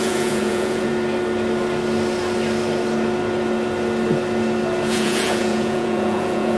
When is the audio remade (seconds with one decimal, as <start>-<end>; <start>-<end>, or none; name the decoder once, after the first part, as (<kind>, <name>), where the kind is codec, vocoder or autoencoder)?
0.0-0.9 (vocoder, Vocos); 4.9-6.6